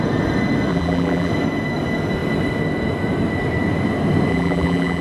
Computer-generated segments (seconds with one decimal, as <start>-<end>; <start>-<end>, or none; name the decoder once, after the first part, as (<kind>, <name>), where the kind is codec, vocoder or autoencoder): 0.7-1.3 (vocoder, BigVGAN v2); 4.3-5.0